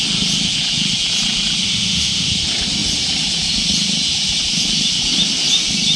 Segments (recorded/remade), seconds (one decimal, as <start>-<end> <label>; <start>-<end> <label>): 0.0-1.6 recorded; 1.6-2.3 remade; 2.3-6.0 recorded